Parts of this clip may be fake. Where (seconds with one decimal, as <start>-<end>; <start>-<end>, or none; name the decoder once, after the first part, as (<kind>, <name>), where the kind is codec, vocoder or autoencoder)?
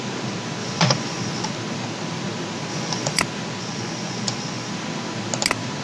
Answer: 0.6-1.5 (vocoder, Vocos); 2.7-3.2; 3.6-4.7